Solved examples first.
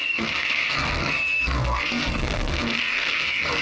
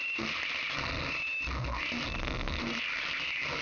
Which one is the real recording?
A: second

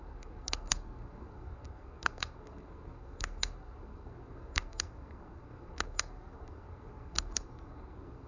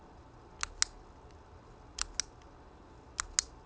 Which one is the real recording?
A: second